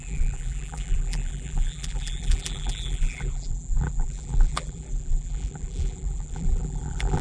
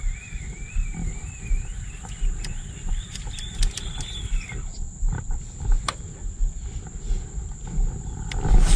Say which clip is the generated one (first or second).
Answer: first